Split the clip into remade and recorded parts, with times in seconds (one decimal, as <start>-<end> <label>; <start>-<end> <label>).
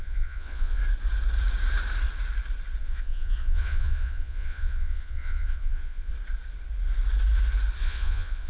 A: 0.0-0.8 remade; 0.8-2.8 recorded; 2.8-6.1 remade; 6.1-7.8 recorded; 7.8-8.5 remade